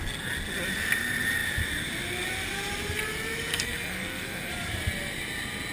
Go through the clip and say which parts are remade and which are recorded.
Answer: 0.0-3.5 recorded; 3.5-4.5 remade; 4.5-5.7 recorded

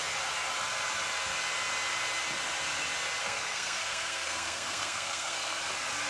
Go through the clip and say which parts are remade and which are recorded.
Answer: 0.0-3.2 recorded; 3.2-5.6 remade; 5.6-6.1 recorded